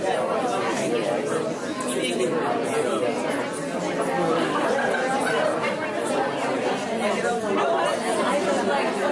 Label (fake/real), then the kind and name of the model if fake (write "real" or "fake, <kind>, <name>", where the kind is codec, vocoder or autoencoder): real